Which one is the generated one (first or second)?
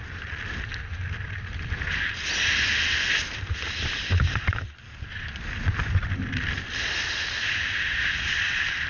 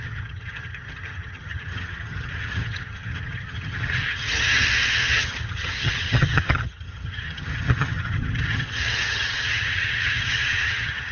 second